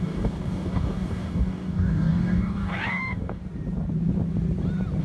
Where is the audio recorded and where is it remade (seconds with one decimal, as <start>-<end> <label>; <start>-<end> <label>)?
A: 0.0-3.4 remade; 3.4-5.0 recorded